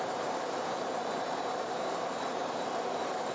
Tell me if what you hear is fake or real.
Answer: fake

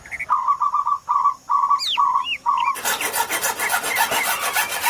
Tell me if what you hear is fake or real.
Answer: real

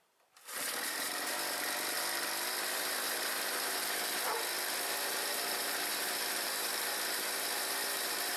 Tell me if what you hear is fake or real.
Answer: fake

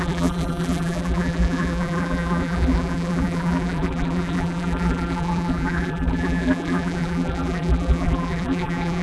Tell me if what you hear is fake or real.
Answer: fake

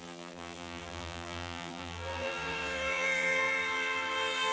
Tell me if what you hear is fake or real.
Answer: fake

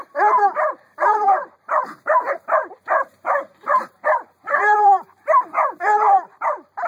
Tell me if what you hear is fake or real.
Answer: fake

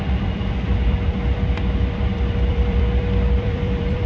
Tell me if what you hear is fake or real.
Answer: fake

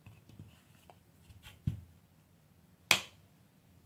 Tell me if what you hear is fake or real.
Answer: real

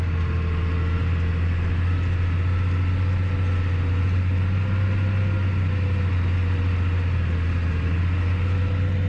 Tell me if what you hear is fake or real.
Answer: real